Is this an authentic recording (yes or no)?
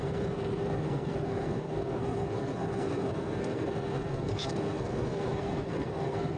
no